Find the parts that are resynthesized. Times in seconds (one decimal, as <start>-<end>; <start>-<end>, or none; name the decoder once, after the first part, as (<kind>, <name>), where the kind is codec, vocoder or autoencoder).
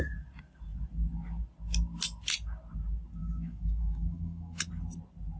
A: 3.2-4.7 (autoencoder, DAC-VAE)